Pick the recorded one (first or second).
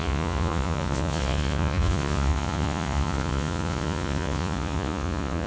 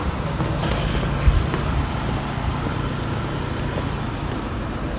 second